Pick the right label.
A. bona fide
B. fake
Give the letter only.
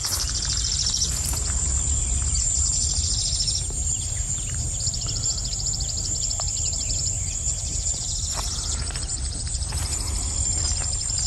B